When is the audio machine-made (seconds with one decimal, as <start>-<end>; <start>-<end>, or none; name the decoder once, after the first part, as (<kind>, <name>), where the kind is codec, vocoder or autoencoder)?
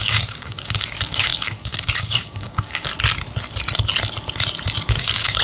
0.0-2.9 (codec, DAC); 4.9-5.4